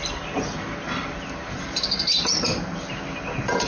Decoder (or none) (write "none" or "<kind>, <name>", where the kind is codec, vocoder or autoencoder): none